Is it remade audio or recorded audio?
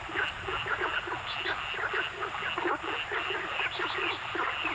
recorded